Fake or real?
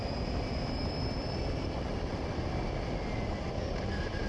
fake